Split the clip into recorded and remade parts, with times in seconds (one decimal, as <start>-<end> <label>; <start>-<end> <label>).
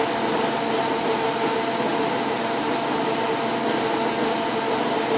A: 0.0-5.2 recorded